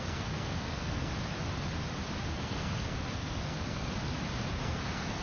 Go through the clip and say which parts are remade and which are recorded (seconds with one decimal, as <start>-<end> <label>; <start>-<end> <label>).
0.0-1.1 remade; 1.1-2.2 recorded; 2.2-3.9 remade; 3.9-4.6 recorded; 4.6-5.2 remade